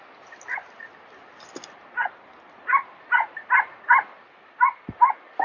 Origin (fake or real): real